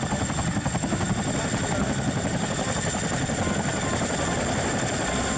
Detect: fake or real real